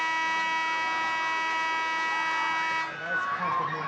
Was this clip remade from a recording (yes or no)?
no